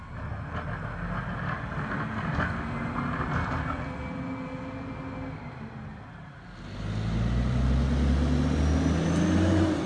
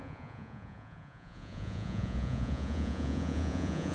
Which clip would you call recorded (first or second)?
first